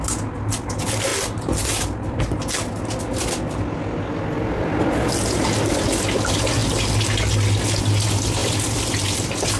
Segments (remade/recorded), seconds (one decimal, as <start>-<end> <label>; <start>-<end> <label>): 0.0-1.1 recorded; 1.1-2.2 remade; 2.2-8.4 recorded; 8.4-9.6 remade